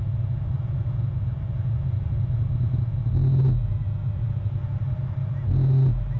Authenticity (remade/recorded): recorded